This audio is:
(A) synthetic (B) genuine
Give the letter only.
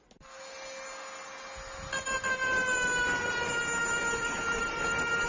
B